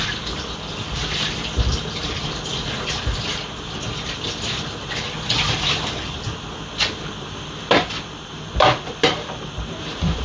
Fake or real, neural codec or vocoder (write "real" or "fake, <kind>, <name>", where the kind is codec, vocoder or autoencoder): fake, vocoder, BigVGAN v2